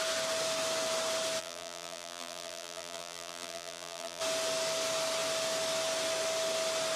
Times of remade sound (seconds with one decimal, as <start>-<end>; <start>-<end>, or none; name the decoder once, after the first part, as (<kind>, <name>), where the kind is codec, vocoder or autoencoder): 1.4-4.2 (vocoder, BigVGAN v2)